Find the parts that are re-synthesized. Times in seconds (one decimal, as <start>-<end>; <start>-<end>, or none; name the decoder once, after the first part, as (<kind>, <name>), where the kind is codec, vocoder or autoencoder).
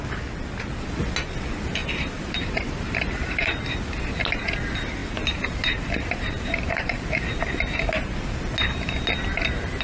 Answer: 1.8-3.6 (vocoder, BigVGAN v2); 5.0-7.0